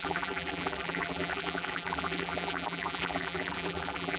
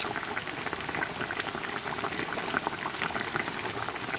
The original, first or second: second